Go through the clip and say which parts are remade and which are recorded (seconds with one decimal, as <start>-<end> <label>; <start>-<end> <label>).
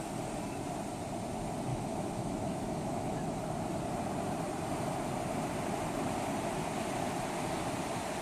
0.0-1.7 recorded; 1.7-3.4 remade; 3.4-8.2 recorded